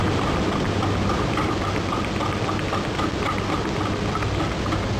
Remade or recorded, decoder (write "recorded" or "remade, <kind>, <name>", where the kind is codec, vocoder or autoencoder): recorded